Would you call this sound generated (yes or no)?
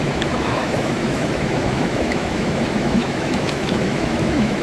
yes